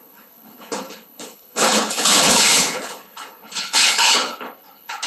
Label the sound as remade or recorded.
remade